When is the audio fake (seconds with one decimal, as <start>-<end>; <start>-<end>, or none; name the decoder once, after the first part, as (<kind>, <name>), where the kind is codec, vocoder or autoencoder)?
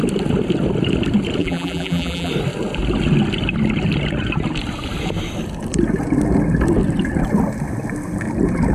1.4-2.3 (vocoder, BigVGAN v2)